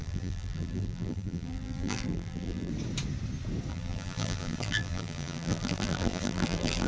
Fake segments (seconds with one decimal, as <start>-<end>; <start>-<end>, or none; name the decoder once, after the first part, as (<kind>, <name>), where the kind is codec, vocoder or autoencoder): 0.0-2.7 (vocoder, BigVGAN v2); 3.7-6.9